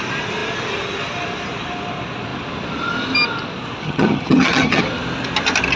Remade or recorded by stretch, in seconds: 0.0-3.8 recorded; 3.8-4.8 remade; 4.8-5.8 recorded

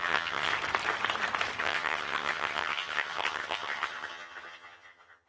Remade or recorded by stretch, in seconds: 0.0-0.5 remade; 0.5-1.6 recorded; 1.6-5.3 remade

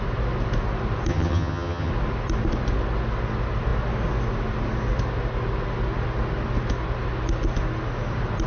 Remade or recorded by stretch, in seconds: 0.0-1.1 recorded; 1.1-1.9 remade; 1.9-8.5 recorded

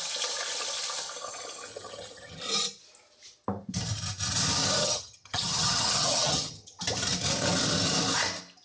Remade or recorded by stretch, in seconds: 0.0-1.7 recorded; 1.7-2.4 remade; 2.4-4.8 recorded; 4.8-6.8 remade; 6.8-8.6 recorded

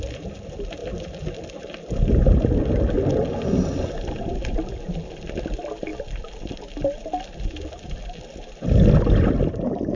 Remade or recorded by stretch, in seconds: 0.0-9.9 recorded

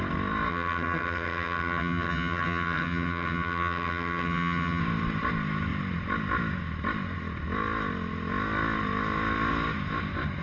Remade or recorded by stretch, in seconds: 0.0-0.5 recorded; 0.5-4.8 remade; 4.8-10.4 recorded

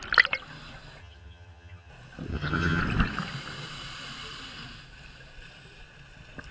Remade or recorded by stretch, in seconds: 0.0-1.0 recorded; 1.0-1.9 remade; 1.9-2.3 recorded; 2.3-2.8 remade; 2.8-6.5 recorded